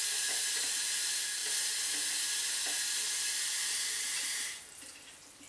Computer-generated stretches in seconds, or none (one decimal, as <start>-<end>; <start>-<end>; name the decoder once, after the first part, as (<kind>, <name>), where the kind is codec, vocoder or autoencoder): none